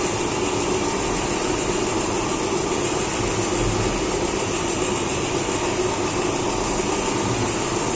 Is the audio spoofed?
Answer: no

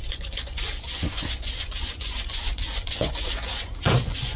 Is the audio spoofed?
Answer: yes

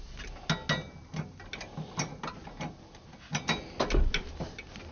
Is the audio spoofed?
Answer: no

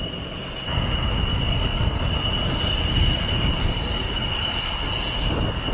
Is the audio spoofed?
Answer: no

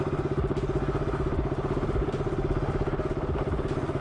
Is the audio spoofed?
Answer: no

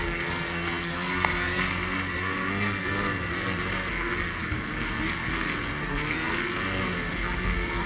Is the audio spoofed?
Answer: yes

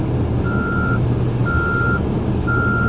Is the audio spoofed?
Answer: no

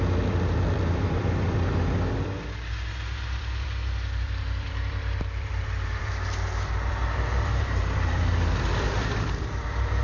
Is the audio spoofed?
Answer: yes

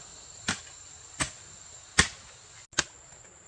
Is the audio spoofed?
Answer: no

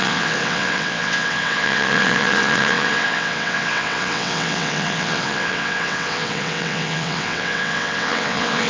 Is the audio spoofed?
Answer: yes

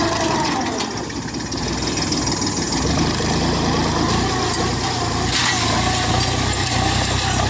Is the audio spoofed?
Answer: no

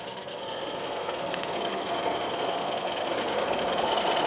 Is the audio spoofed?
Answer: yes